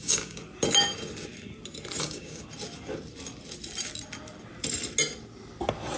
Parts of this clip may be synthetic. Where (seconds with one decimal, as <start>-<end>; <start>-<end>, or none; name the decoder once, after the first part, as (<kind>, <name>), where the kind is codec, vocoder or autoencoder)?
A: 0.0-0.4 (codec, DAC); 2.0-2.4